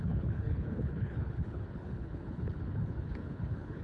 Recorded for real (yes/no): no